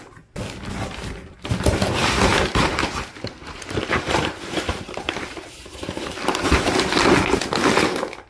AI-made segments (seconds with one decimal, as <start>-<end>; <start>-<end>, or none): 2.3-6.1